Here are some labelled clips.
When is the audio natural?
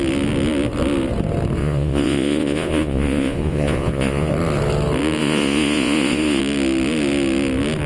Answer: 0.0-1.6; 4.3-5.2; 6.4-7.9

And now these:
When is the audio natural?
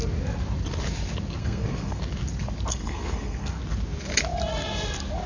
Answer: 0.0-1.4; 2.0-2.7; 3.6-5.3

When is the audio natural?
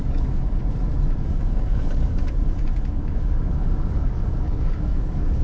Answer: 0.6-1.2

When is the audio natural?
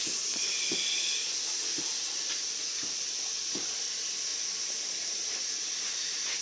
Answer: 0.0-6.4